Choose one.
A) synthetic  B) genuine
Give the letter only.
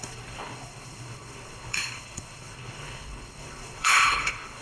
A